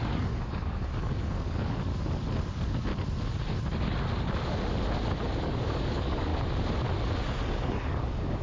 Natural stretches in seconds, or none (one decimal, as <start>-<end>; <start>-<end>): 1.9-2.5; 2.9-5.4; 6.3-7.5